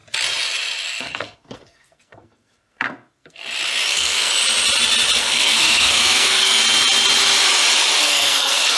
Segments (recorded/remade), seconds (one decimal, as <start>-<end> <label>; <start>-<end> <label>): 0.0-1.0 recorded; 1.0-3.4 remade; 3.4-3.9 recorded; 3.9-4.3 remade; 4.3-5.2 recorded; 5.2-6.6 remade; 6.6-8.0 recorded; 8.0-8.8 remade